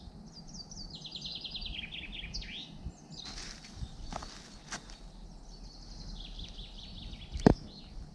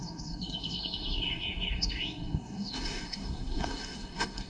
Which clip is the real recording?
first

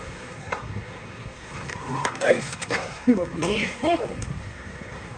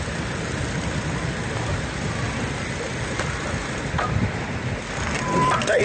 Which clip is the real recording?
second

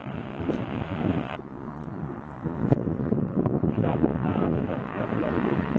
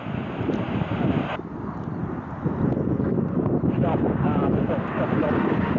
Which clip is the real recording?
second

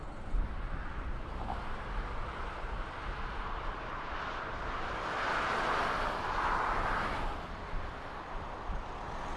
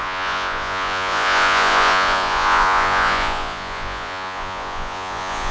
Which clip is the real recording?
first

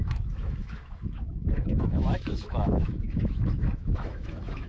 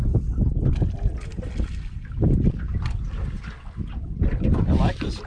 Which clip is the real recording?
second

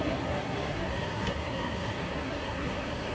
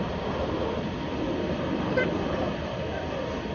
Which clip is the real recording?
second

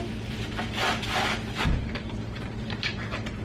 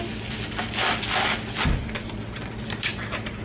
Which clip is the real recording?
second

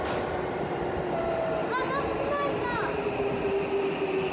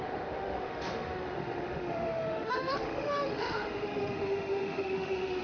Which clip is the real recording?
first